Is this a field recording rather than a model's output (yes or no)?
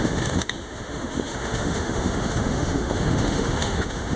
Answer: no